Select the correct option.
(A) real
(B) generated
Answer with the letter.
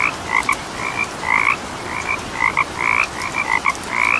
B